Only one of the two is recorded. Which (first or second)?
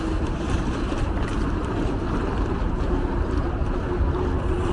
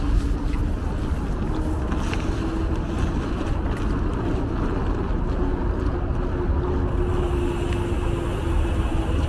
second